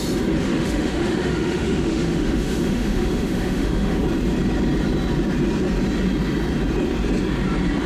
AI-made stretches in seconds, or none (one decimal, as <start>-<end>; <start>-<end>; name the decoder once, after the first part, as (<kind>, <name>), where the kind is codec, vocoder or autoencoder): 0.4-4.0 (autoencoder, DAC-VAE)